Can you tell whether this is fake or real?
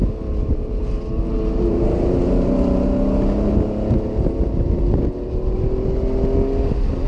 real